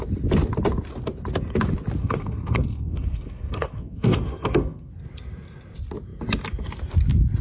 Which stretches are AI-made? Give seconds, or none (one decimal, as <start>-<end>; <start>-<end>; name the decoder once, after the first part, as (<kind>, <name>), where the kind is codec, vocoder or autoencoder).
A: 2.0-4.9 (codec, SNAC)